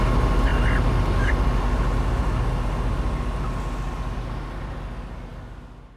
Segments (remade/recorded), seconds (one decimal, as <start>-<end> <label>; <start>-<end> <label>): 0.0-6.0 recorded